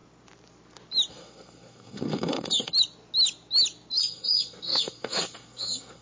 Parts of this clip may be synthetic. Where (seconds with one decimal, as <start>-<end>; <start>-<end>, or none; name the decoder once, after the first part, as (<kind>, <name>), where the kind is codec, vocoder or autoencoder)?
1.1-2.7 (codec, SNAC); 4.0-6.0